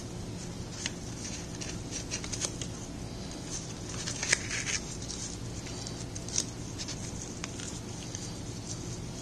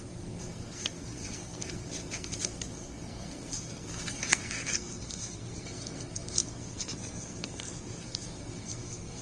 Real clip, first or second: first